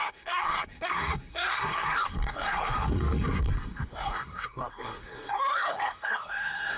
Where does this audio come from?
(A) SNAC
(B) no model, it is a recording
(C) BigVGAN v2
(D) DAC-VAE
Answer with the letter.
A